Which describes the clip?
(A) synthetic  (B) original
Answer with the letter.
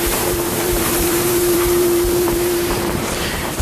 A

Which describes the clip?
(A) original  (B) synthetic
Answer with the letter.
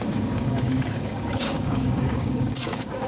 B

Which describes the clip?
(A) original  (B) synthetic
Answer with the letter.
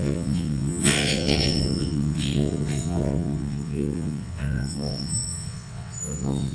B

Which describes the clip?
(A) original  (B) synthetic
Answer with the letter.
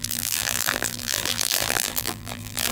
B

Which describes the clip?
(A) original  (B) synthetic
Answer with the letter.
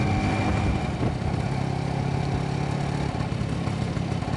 A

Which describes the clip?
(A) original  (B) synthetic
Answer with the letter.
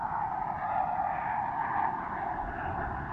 A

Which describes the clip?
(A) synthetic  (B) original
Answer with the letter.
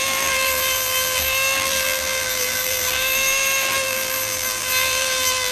A